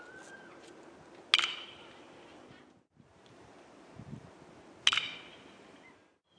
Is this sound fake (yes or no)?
no